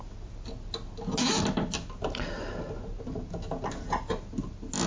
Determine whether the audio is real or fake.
real